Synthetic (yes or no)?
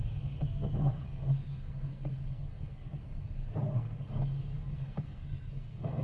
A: yes